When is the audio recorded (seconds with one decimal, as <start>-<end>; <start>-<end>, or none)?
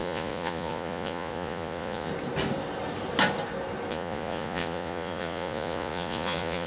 2.1-3.9